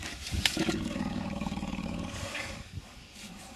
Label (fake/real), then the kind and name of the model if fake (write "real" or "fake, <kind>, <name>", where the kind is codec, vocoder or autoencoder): fake, codec, DAC